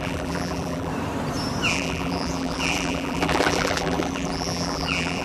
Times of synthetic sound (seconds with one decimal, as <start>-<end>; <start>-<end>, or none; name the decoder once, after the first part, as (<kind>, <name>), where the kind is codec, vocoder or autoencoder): 0.0-0.9 (vocoder, BigVGAN v2); 1.7-5.2